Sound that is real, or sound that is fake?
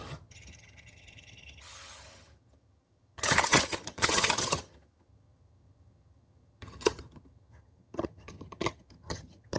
fake